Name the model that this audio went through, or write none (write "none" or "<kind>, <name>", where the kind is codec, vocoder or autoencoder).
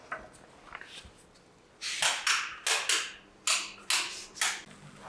none